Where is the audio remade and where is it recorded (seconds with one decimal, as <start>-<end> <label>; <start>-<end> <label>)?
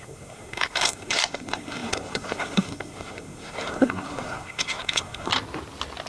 0.0-5.3 remade; 5.3-6.1 recorded